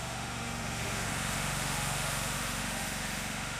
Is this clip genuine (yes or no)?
no